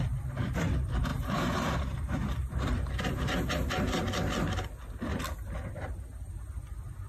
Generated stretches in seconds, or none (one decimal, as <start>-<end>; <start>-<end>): 1.1-2.9